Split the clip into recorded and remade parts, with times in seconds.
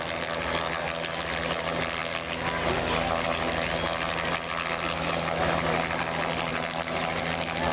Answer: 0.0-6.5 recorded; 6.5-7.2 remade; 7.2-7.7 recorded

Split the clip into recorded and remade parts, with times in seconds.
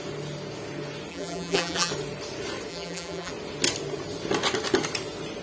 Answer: 0.0-1.1 recorded; 1.1-1.9 remade; 1.9-2.7 recorded; 2.7-3.3 remade; 3.3-5.4 recorded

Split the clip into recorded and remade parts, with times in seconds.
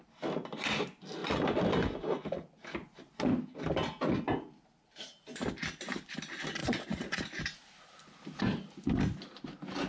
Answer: 0.0-6.6 recorded; 6.6-7.2 remade; 7.2-9.9 recorded